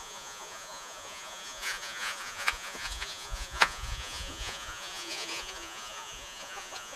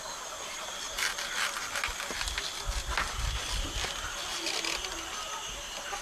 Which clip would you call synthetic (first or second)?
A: first